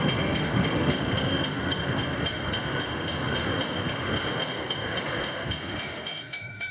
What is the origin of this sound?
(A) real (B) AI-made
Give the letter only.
B